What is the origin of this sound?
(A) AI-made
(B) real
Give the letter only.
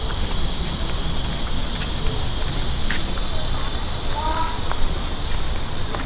B